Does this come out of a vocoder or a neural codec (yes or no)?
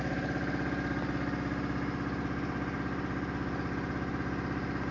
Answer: no